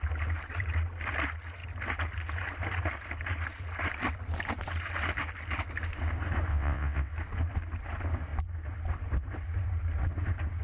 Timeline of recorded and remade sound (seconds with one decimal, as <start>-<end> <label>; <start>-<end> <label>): 0.0-6.5 recorded; 6.5-7.1 remade; 7.1-10.6 recorded